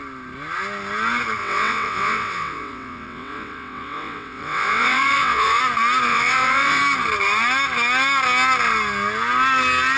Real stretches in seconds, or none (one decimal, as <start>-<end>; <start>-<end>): 0.0-1.4; 5.6-6.1; 6.8-10.0